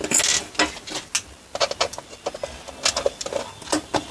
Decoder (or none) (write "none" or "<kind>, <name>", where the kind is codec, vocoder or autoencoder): none